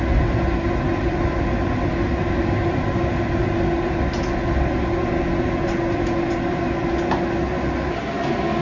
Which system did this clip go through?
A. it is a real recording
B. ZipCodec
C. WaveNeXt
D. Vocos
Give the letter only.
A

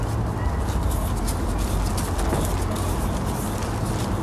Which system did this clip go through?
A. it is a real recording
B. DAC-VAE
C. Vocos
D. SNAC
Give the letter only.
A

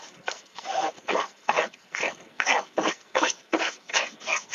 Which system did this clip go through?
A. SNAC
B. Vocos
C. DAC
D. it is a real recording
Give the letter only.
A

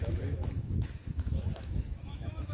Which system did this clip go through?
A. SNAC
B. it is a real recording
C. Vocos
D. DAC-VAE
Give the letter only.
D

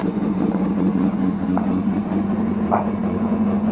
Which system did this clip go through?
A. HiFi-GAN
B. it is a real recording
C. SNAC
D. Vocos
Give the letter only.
D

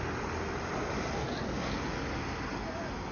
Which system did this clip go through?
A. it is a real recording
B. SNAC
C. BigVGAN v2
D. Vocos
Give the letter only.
A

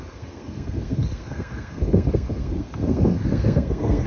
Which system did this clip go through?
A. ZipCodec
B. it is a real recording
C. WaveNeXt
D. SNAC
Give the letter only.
D